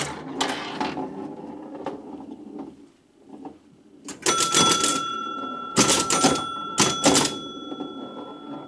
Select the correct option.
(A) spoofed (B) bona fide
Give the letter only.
B